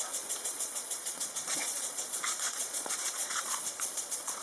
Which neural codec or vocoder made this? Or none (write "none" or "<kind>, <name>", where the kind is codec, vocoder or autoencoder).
vocoder, Vocos